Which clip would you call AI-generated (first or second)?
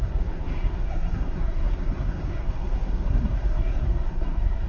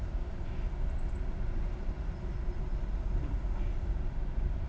first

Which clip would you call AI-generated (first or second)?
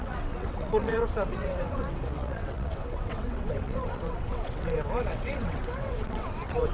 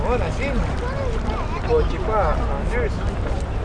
first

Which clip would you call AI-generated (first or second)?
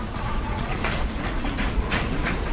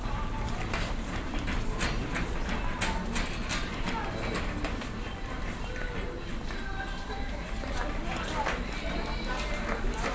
first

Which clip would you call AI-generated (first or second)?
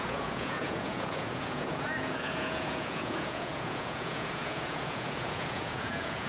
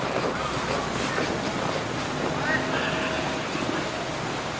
first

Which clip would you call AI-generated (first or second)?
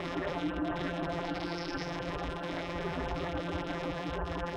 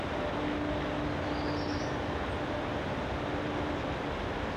first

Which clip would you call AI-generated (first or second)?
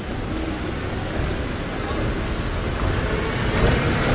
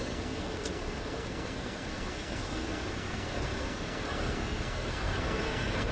second